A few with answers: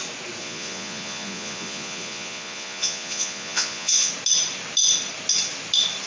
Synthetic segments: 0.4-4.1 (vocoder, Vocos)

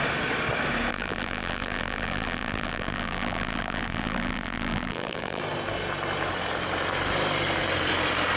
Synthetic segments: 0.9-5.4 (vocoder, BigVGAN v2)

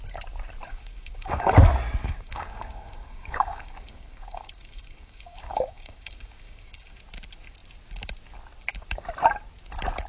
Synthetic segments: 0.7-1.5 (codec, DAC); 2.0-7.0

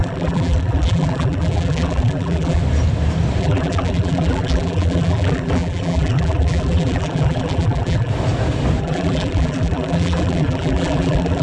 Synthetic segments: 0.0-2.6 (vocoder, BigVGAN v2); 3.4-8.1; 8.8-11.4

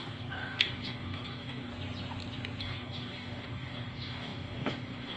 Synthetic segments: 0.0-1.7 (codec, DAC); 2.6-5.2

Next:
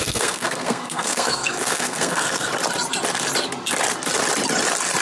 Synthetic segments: 0.0-2.5 (codec, SNAC)

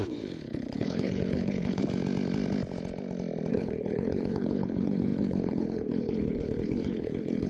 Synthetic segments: 0.0-1.8 (codec, HILCodec); 3.5-7.5